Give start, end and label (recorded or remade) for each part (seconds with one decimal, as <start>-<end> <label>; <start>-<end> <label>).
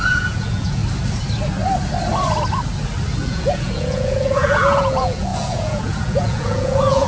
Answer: 0.0-0.8 remade; 0.8-3.2 recorded; 3.2-7.1 remade